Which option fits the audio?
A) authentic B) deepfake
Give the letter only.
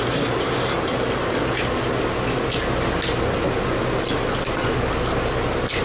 A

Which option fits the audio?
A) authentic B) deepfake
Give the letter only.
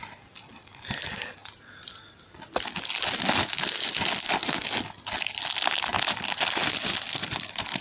A